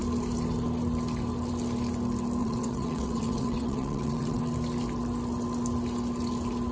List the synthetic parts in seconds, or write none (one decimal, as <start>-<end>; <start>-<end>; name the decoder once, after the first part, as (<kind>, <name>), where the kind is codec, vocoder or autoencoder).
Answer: 2.4-4.4 (vocoder, WaveNeXt)